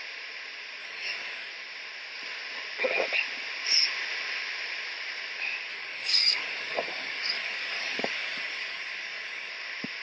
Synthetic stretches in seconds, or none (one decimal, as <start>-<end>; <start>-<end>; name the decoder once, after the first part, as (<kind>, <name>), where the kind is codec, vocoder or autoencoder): 0.8-1.5 (codec, DAC); 5.7-9.5